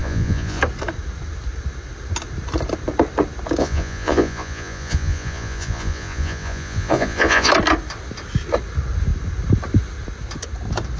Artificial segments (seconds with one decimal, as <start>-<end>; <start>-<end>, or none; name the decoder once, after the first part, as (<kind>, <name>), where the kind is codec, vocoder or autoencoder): 0.0-0.6 (vocoder, Vocos); 3.6-7.5